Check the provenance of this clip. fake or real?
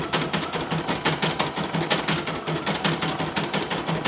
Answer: real